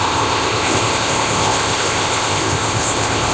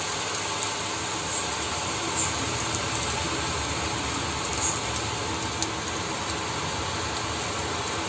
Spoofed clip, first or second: first